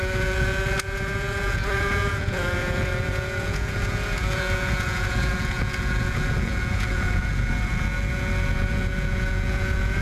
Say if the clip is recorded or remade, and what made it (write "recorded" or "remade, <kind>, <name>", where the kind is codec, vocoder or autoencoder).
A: remade, vocoder, Vocos